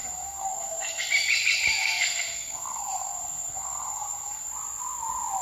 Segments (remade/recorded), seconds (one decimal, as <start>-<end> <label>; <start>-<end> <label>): 0.0-1.0 remade; 1.0-1.8 recorded; 1.8-4.5 remade; 4.5-5.4 recorded